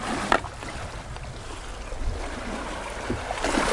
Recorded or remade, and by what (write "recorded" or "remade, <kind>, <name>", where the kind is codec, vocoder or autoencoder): recorded